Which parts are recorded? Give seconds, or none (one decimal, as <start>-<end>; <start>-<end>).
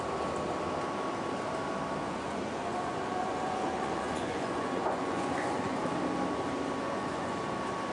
0.0-2.0; 5.8-6.8; 7.4-7.9